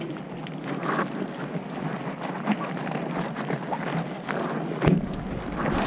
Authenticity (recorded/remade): recorded